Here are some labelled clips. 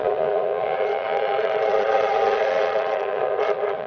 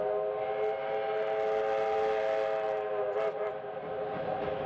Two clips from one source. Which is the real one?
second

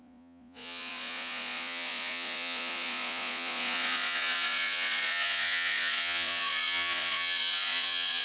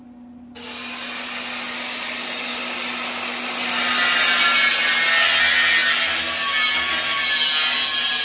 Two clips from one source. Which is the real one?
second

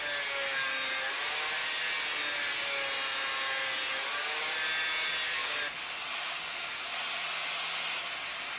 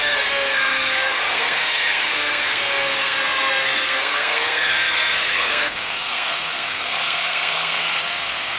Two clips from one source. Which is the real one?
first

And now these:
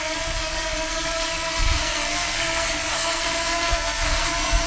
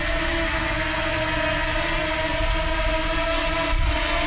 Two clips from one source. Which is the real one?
second